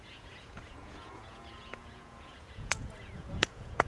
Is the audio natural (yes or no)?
no